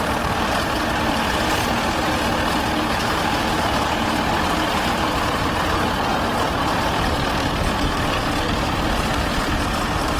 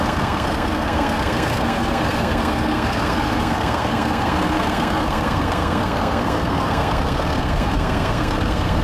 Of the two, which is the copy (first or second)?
second